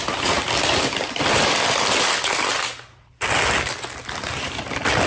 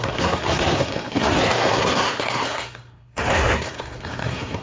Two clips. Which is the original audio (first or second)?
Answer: first